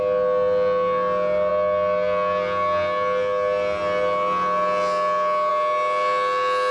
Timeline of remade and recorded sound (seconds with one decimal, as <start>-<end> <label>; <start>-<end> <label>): 0.0-6.7 recorded